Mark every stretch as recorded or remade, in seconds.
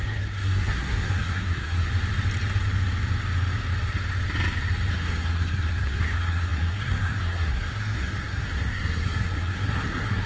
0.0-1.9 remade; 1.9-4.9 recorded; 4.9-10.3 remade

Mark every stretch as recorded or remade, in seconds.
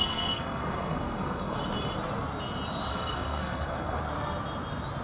0.0-1.6 remade; 1.6-2.9 recorded; 2.9-4.0 remade; 4.0-5.0 recorded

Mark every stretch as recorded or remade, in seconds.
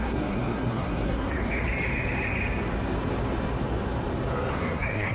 0.0-1.4 remade; 1.4-4.5 recorded; 4.5-5.1 remade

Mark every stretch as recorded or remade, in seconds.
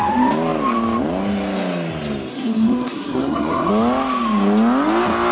0.0-2.3 recorded; 2.3-3.7 remade; 3.7-5.3 recorded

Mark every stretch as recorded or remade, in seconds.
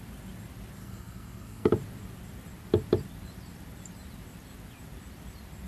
0.0-0.8 recorded; 0.8-1.7 remade; 1.7-5.7 recorded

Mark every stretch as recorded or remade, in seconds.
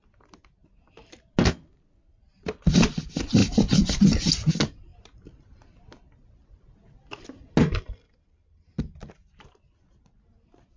0.0-10.8 recorded